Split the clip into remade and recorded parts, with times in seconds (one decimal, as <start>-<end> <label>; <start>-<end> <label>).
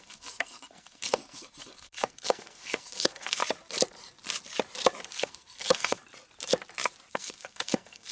0.0-3.4 remade; 3.4-5.1 recorded; 5.1-6.0 remade; 6.0-7.1 recorded; 7.1-8.1 remade